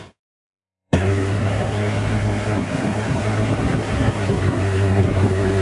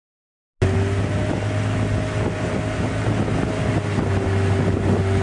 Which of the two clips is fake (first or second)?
first